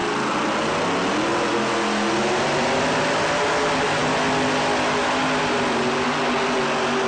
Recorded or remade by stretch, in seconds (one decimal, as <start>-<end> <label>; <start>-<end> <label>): 0.0-0.8 remade; 0.8-1.3 recorded; 1.3-3.6 remade; 3.6-7.1 recorded